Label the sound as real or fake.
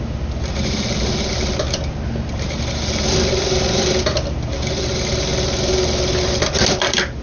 real